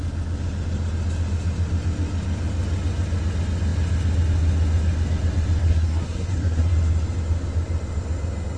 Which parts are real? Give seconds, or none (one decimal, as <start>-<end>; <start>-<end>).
0.0-5.6; 6.7-8.6